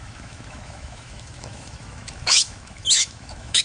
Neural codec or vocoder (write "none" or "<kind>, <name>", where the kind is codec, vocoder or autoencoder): autoencoder, DAC-VAE